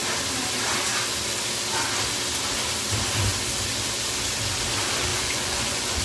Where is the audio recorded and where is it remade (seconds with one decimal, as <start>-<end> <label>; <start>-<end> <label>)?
0.0-5.1 recorded; 5.1-6.0 remade